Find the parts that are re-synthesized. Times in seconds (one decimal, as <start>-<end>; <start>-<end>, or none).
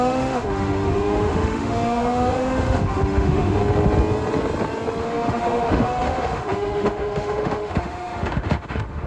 0.0-3.6; 5.0-9.1